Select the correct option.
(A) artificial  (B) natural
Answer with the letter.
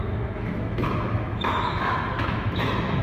A